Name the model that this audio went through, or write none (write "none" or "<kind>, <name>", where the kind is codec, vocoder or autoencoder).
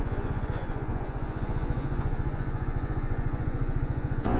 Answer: vocoder, Vocos